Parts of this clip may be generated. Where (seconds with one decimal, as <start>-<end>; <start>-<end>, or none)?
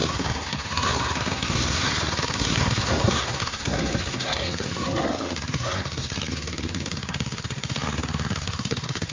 0.0-9.1